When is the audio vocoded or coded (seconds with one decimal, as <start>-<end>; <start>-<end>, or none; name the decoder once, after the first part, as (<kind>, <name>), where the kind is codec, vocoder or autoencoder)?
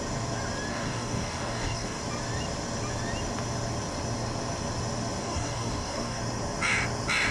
0.7-2.0 (codec, DAC); 5.2-6.2